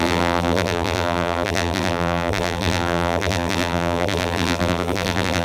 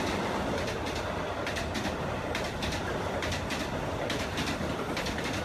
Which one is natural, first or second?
second